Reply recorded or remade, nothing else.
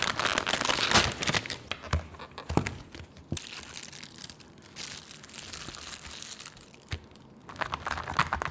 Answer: recorded